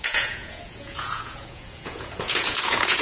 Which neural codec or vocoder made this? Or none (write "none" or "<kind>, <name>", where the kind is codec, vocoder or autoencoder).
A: vocoder, Vocos